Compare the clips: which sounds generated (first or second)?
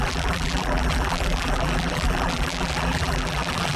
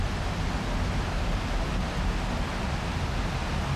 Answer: first